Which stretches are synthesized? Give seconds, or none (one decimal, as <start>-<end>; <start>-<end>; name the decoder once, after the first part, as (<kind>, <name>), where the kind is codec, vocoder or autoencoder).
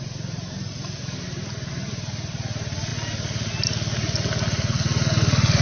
none